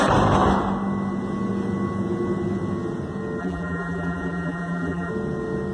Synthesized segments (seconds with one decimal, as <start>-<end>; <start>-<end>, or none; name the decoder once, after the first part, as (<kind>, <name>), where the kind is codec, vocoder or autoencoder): 3.4-5.1 (vocoder, BigVGAN v2)